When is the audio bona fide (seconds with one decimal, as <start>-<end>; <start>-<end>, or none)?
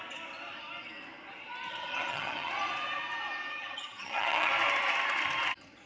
0.0-1.7; 2.5-3.5; 4.5-5.9